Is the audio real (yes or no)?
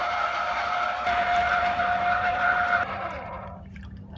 no